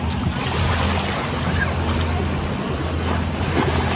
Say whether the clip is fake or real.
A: real